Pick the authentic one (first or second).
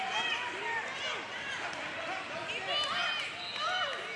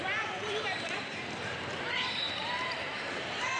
first